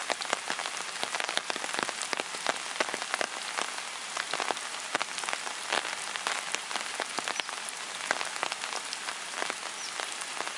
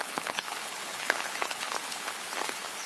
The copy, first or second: second